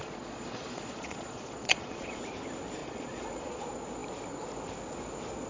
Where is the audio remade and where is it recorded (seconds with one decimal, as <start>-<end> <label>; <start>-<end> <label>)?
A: 0.0-2.2 remade; 2.2-2.8 recorded; 2.8-3.6 remade; 3.6-5.5 recorded